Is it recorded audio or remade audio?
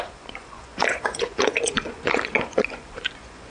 remade